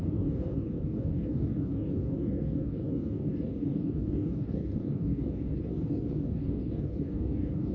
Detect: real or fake fake